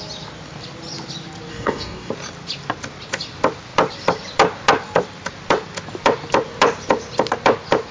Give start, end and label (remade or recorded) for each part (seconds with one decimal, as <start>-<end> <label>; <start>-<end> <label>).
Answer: 0.0-1.5 recorded; 1.5-2.1 remade; 2.1-7.9 recorded